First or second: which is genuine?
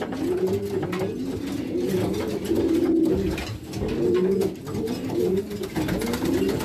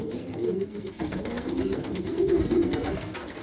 first